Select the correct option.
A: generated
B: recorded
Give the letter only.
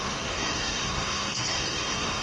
A